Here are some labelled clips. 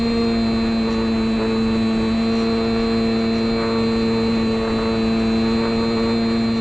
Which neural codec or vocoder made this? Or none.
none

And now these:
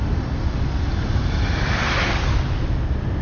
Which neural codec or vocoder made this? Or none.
none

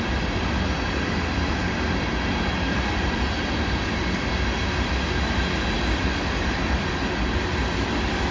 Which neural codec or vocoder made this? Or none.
none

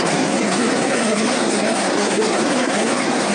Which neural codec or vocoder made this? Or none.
codec, SNAC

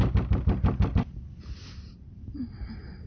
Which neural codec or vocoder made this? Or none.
none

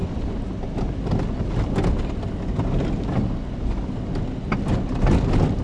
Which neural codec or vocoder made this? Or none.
none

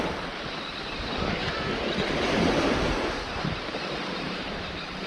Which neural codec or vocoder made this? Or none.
none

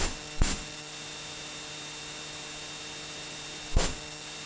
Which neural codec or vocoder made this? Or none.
none